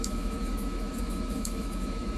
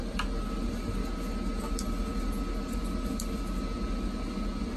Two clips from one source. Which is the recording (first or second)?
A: second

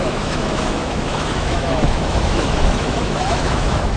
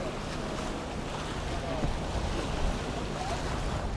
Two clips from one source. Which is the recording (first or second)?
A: second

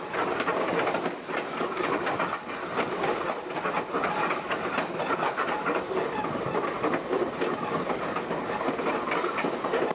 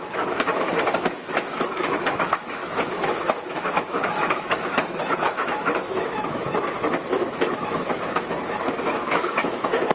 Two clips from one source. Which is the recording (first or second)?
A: first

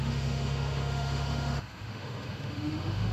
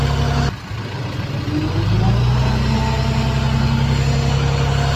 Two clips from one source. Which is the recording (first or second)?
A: second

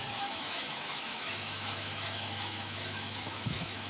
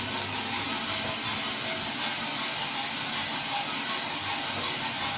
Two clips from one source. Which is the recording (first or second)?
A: second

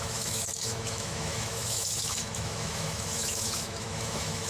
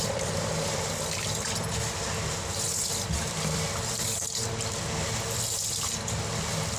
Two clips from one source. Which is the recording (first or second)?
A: second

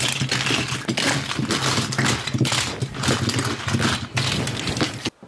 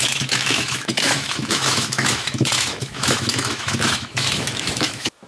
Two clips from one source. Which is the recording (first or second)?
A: first